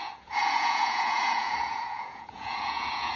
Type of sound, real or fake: fake